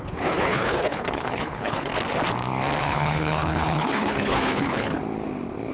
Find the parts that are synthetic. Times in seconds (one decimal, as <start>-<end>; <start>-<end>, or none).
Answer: 0.0-1.9; 2.8-5.0